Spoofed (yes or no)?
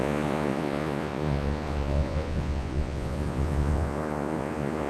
yes